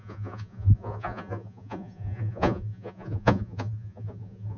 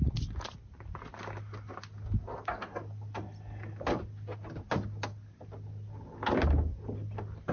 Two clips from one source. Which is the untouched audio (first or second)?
second